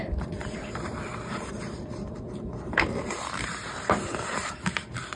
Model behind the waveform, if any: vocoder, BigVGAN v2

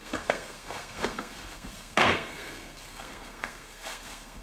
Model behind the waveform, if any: codec, SNAC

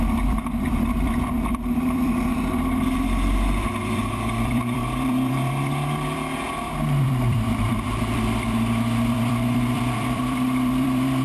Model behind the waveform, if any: vocoder, BigVGAN v2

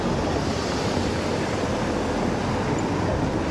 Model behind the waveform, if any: none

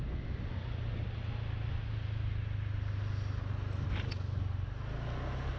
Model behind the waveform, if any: none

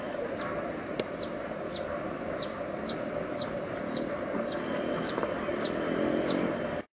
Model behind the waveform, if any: none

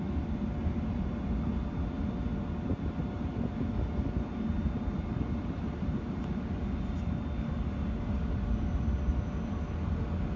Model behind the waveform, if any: none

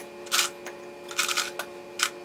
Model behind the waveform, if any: none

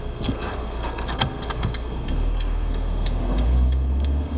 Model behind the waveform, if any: codec, SNAC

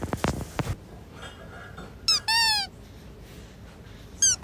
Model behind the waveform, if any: none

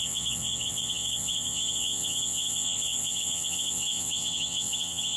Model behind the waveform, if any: vocoder, WaveNeXt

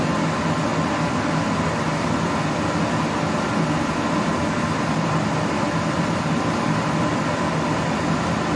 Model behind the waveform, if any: none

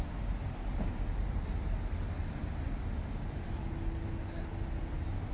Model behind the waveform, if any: none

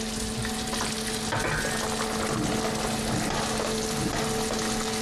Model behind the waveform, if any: none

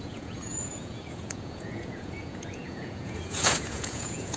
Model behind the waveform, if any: vocoder, Vocos